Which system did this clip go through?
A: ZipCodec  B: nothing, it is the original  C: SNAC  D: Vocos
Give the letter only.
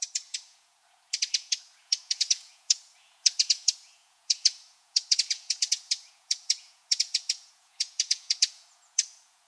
D